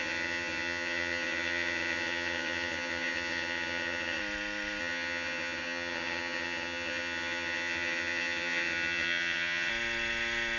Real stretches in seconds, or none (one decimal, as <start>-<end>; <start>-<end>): 4.2-4.8; 9.7-10.6